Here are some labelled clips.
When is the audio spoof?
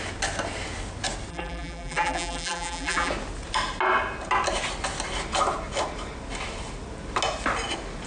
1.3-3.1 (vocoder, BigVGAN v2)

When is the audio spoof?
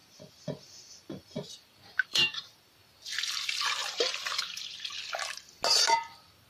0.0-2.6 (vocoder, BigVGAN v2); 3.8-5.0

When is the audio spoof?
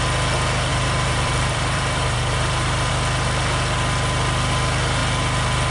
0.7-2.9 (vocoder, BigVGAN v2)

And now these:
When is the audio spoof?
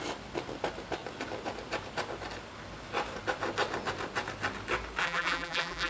5.0-5.9 (vocoder, BigVGAN v2)